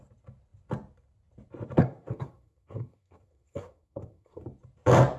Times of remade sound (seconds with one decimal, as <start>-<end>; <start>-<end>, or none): 1.8-4.4

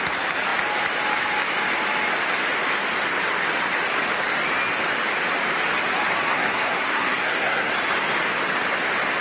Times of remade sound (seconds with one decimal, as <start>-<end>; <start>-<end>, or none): 6.3-7.7

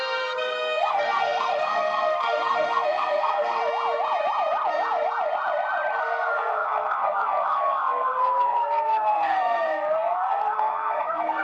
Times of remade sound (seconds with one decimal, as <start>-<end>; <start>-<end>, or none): 0.0-3.6; 6.0-11.4

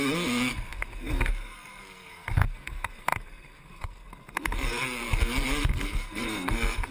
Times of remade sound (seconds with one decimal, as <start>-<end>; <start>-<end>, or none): 0.0-6.9

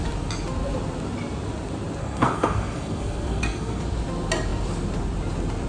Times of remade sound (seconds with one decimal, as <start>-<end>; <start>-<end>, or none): 2.0-3.8

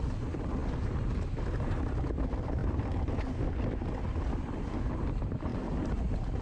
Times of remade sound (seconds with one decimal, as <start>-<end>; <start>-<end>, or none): none

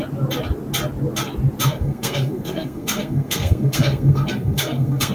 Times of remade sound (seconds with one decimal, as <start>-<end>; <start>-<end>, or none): 1.6-5.1